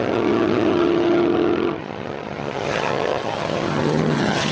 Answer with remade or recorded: remade